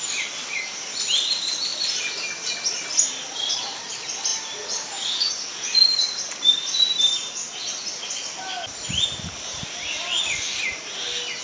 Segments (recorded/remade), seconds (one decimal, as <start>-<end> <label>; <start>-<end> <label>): 0.0-11.4 recorded